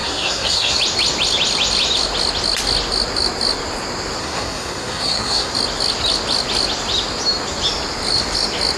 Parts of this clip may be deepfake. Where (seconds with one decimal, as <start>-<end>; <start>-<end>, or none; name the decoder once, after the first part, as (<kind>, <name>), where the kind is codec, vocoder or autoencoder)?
0.0-0.8 (codec, SNAC); 4.2-5.5